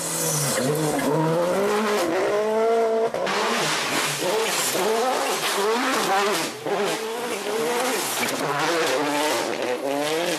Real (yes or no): yes